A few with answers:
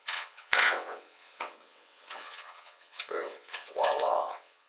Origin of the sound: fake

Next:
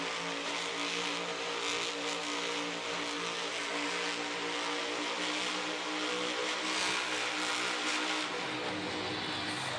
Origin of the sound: real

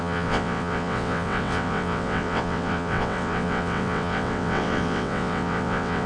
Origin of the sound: fake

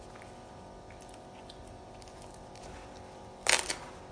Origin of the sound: real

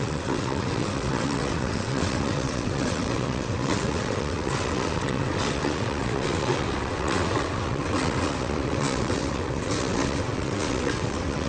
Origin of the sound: fake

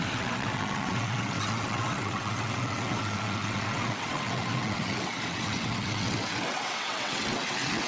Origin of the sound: fake